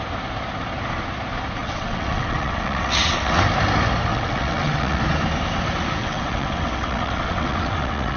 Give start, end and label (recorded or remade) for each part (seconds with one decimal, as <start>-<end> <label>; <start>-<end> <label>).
0.0-1.6 recorded; 1.6-3.4 remade; 3.4-4.1 recorded; 4.1-5.0 remade; 5.0-6.0 recorded; 6.0-8.2 remade